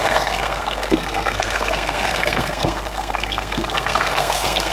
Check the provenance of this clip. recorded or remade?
remade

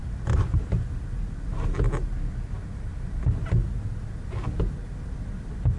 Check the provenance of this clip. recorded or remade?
recorded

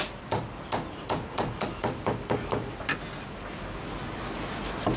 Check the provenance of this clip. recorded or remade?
recorded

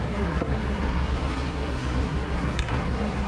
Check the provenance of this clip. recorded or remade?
remade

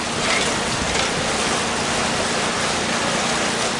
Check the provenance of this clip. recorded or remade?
recorded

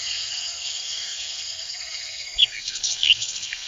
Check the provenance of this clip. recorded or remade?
remade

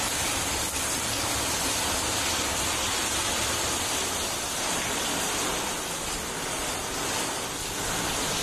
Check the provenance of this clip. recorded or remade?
recorded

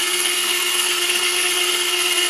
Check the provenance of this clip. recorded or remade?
remade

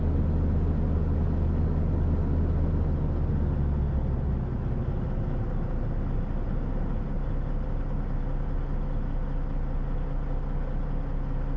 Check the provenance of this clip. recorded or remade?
recorded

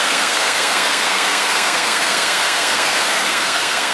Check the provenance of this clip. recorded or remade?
remade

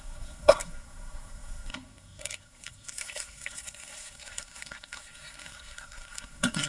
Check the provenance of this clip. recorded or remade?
remade